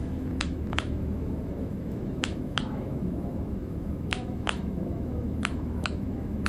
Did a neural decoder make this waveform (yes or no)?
yes